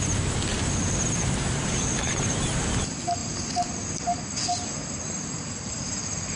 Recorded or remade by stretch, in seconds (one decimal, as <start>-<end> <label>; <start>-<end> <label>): 0.0-0.5 recorded; 0.5-2.5 remade; 2.5-3.2 recorded; 3.2-4.2 remade; 4.2-6.4 recorded